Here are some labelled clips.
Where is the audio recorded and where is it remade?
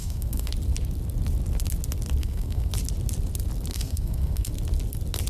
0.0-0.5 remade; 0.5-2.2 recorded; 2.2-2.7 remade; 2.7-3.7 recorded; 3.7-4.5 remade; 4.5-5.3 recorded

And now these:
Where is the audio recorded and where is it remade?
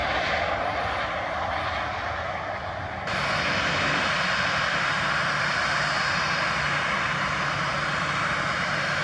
0.0-9.0 recorded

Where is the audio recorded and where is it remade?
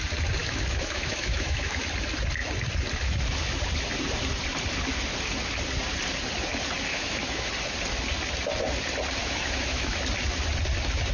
0.0-0.4 recorded; 0.4-1.8 remade; 1.8-6.9 recorded; 6.9-7.5 remade; 7.5-9.2 recorded; 9.2-10.0 remade; 10.0-11.1 recorded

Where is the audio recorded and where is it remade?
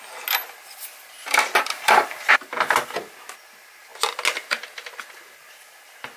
0.0-1.7 recorded; 1.7-2.3 remade; 2.3-6.2 recorded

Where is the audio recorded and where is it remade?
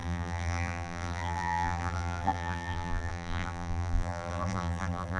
0.0-5.2 remade